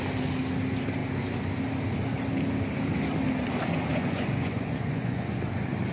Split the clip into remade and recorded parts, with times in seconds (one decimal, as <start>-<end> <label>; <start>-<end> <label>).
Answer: 0.0-3.9 recorded; 3.9-5.4 remade; 5.4-5.9 recorded